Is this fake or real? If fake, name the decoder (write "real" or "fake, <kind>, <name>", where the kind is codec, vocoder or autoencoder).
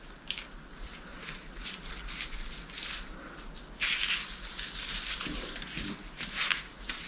real